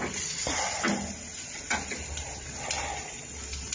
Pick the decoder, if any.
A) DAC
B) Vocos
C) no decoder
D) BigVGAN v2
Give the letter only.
C